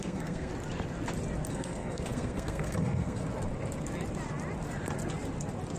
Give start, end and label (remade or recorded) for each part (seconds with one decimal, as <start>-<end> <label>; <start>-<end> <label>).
0.0-0.5 remade; 0.5-1.5 recorded; 1.5-3.2 remade; 3.2-5.8 recorded